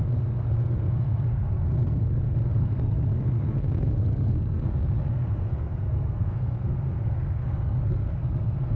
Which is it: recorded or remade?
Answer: remade